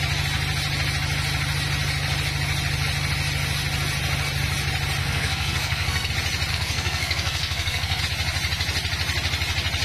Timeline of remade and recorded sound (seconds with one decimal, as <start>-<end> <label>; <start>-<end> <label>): 0.0-5.0 recorded; 5.0-6.1 remade; 6.1-6.5 recorded; 6.5-8.0 remade; 8.0-9.8 recorded